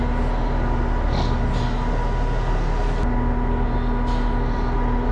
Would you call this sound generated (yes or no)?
no